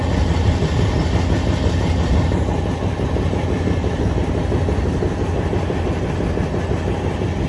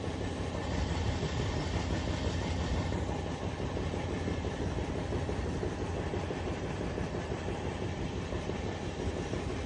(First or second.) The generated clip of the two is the second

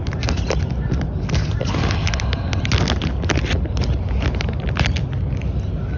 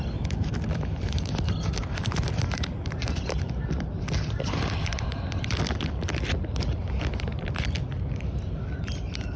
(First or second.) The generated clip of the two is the second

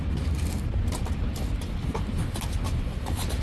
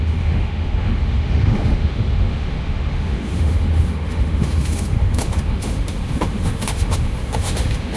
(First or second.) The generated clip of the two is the second